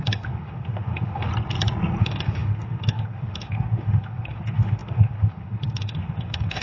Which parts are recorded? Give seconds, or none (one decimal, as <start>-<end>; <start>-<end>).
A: 1.3-2.0